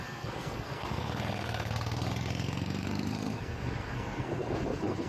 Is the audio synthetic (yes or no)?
yes